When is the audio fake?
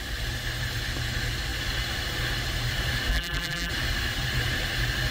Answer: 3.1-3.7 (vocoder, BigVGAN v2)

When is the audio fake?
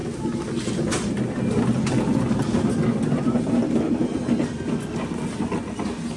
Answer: none